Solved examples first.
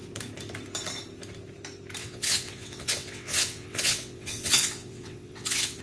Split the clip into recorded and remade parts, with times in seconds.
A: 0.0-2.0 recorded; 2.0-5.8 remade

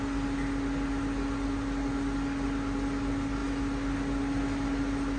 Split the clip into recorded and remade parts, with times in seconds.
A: 0.0-5.2 recorded

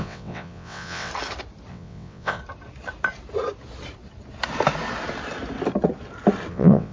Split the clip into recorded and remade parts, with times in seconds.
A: 0.0-1.1 remade; 1.1-1.7 recorded; 1.7-2.4 remade; 2.4-6.5 recorded; 6.5-6.9 remade

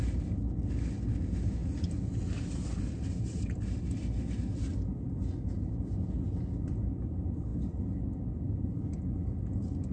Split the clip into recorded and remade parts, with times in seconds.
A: 0.0-9.9 recorded